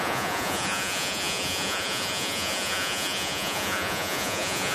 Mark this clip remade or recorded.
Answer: remade